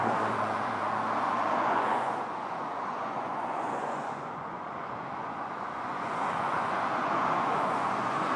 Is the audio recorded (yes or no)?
no